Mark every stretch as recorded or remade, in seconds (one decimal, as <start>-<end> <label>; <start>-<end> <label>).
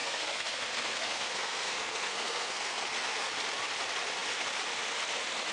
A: 0.0-3.3 remade; 3.3-5.5 recorded